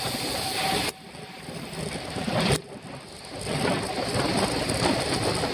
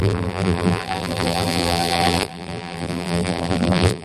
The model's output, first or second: second